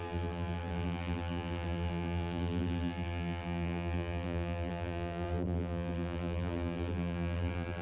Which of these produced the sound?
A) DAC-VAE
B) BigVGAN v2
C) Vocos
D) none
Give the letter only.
B